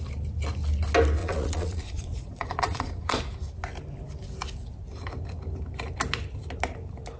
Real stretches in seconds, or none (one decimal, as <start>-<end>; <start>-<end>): 0.0-1.2; 3.2-7.2